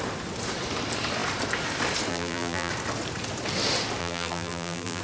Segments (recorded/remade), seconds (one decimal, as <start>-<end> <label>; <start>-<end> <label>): 0.0-2.1 recorded; 2.1-2.7 remade; 2.7-4.0 recorded; 4.0-5.0 remade

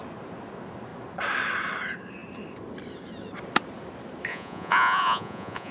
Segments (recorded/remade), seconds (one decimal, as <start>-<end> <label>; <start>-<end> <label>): 0.0-4.3 recorded; 4.3-5.7 remade

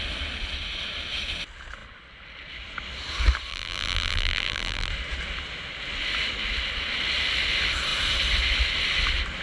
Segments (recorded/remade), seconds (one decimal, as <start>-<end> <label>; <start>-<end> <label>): 0.0-3.5 recorded; 3.5-4.9 remade; 4.9-9.4 recorded

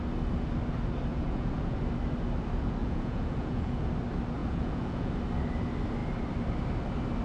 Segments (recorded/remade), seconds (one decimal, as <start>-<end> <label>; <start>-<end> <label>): 0.0-1.1 recorded; 1.1-1.8 remade; 1.8-2.8 recorded; 2.8-3.9 remade; 3.9-4.4 recorded; 4.4-5.1 remade; 5.1-7.2 recorded

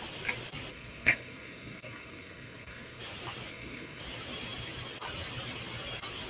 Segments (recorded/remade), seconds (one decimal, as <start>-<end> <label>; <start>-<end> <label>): 0.0-0.7 recorded; 0.7-3.0 remade; 3.0-3.5 recorded; 3.5-4.0 remade; 4.0-6.3 recorded